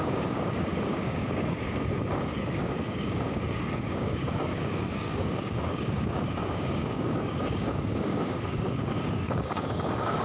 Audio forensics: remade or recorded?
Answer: remade